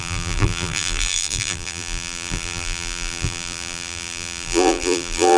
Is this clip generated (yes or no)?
yes